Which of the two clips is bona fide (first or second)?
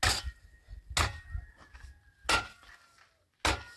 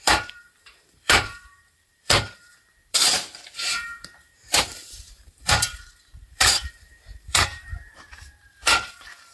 first